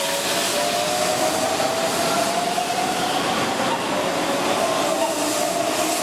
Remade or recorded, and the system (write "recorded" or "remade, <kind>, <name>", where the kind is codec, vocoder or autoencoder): recorded